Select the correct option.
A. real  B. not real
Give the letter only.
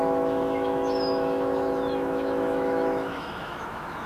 B